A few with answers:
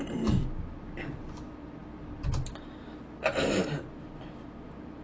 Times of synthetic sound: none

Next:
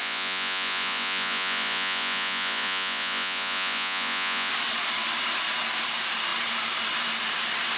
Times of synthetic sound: 0.0-4.5 (vocoder, Vocos)

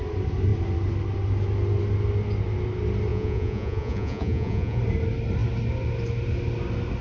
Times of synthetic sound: 3.1-4.8 (vocoder, Vocos)

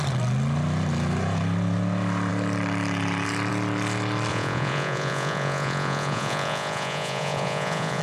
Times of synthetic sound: 4.3-8.0 (vocoder, Vocos)

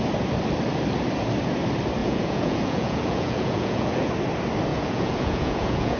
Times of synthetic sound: 2.0-4.1 (vocoder, Vocos); 4.7-6.0